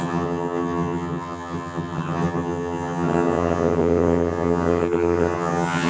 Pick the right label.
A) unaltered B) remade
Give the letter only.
B